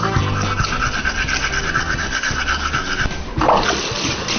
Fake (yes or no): no